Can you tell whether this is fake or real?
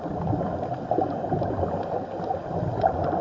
real